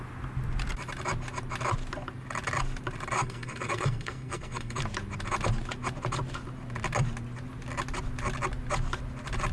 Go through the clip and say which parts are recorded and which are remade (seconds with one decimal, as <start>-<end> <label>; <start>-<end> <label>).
0.0-3.2 recorded; 3.2-4.8 remade; 4.8-9.5 recorded